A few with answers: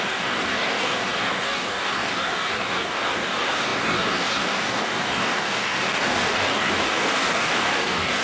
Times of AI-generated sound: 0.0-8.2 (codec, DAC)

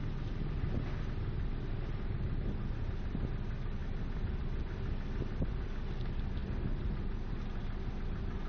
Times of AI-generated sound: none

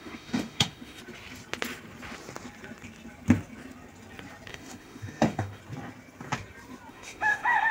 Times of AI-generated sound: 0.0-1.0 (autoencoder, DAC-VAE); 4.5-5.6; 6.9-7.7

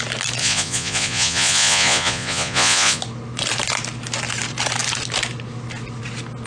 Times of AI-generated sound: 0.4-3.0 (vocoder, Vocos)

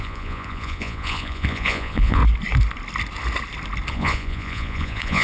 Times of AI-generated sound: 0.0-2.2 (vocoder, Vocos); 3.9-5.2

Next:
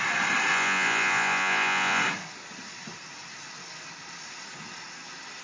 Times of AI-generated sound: 0.5-2.0 (vocoder, Vocos)

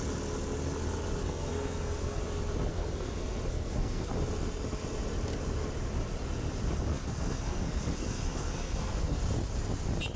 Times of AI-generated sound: 1.2-2.2 (codec, SNAC); 2.7-4.1; 6.9-9.2